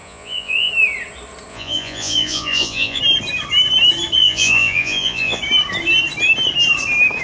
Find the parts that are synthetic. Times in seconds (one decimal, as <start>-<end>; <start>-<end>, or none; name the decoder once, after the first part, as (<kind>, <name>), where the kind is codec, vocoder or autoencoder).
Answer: 0.0-0.7 (vocoder, Vocos); 1.5-3.0; 4.2-5.4